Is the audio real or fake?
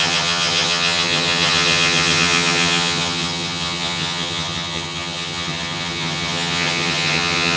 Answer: fake